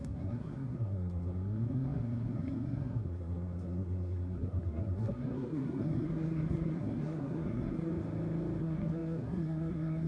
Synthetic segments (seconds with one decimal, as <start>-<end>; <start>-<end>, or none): 0.0-7.9; 8.6-10.1